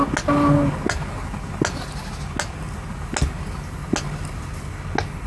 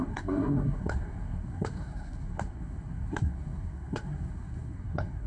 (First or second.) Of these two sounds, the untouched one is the first